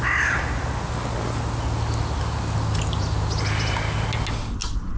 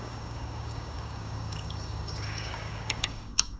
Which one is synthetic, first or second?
second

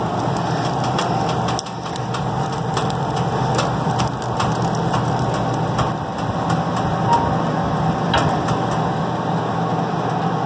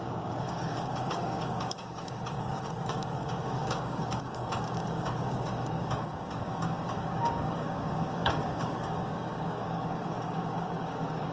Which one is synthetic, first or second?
second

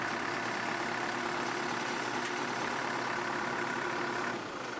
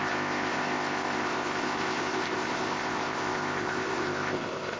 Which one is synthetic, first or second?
second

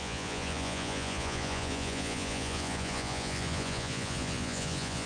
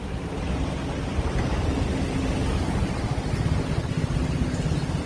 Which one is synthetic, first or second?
first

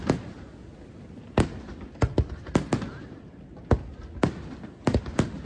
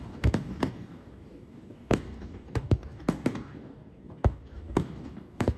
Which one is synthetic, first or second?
second